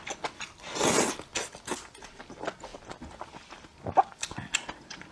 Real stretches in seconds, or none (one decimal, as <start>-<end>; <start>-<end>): 0.0-5.1